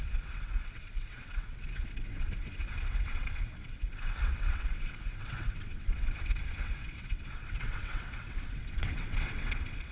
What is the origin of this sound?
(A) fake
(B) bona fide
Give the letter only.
A